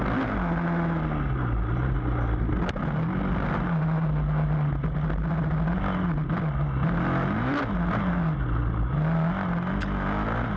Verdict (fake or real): real